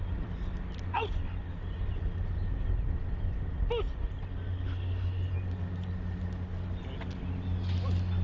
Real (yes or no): yes